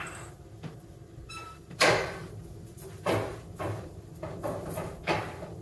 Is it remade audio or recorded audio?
remade